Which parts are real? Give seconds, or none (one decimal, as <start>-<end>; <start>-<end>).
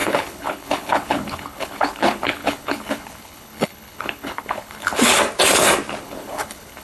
5.2-6.0